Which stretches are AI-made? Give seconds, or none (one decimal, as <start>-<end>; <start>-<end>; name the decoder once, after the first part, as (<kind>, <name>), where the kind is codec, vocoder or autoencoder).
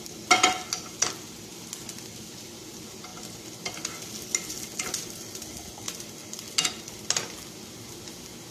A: none